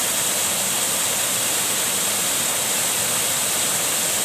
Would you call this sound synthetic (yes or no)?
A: no